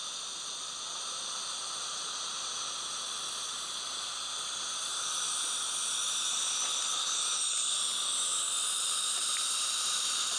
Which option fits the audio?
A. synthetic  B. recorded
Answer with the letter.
B